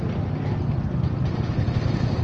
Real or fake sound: real